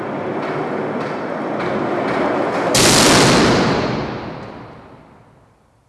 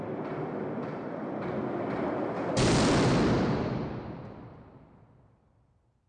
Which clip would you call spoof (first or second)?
second